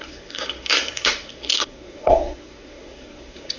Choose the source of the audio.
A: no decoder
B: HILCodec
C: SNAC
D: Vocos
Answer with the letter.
C